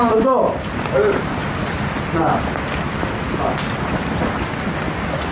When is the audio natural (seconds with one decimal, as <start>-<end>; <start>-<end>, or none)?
0.0-5.3